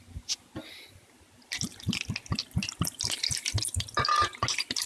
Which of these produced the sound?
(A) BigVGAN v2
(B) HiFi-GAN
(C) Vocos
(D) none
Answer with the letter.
D